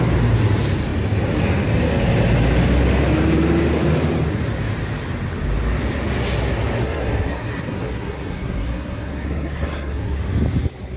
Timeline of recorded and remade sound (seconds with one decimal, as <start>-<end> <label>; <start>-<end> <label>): 0.0-6.8 recorded; 6.8-10.2 remade; 10.2-11.0 recorded